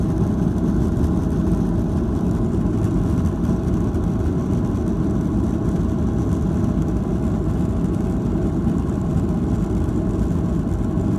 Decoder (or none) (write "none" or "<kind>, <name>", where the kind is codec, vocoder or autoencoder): none